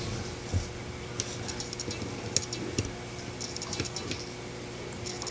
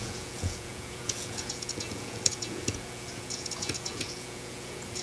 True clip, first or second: first